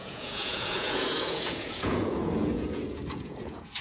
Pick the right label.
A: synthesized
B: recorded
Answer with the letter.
A